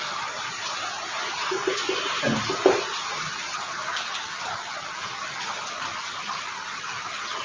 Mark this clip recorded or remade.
recorded